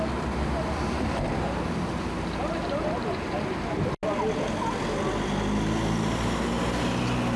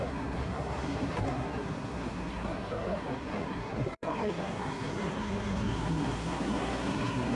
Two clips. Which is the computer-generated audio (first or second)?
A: second